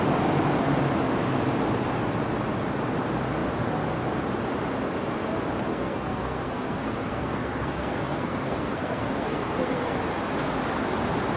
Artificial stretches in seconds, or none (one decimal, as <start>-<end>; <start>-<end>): 5.7-10.0